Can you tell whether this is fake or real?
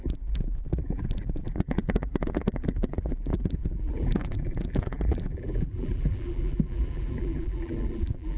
fake